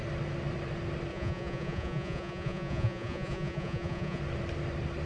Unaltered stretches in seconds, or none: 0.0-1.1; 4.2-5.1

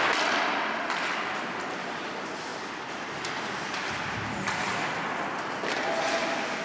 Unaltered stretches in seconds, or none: 0.0-6.6

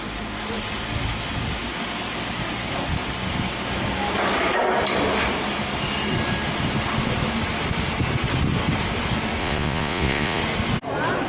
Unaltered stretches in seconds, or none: 0.0-9.4; 10.4-11.3